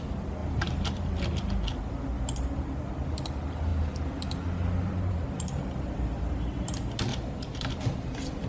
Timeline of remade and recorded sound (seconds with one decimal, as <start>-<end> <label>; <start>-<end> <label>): 0.0-0.4 recorded; 0.4-1.1 remade; 1.1-7.1 recorded; 7.1-7.7 remade; 7.7-8.5 recorded

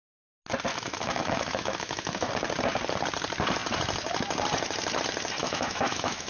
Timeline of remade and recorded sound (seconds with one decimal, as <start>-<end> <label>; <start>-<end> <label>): 0.0-0.7 recorded; 0.7-2.3 remade; 2.3-5.4 recorded; 5.4-6.3 remade

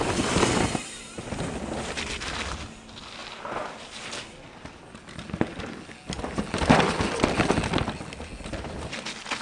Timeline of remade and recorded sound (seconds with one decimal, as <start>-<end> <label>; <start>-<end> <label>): 0.0-9.4 recorded

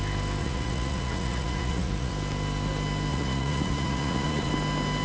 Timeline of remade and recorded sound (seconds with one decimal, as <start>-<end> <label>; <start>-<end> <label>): 0.0-0.4 recorded; 0.4-2.1 remade; 2.1-3.1 recorded; 3.1-4.5 remade; 4.5-5.0 recorded

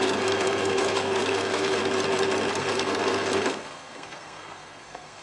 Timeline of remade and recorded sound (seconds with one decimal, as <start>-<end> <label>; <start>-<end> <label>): 0.0-1.8 remade; 1.8-2.5 recorded; 2.5-5.2 remade

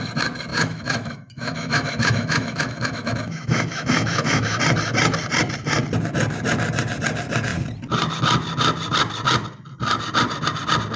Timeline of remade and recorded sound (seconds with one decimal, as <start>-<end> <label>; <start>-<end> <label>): 0.0-0.5 recorded; 0.5-4.6 remade; 4.6-11.0 recorded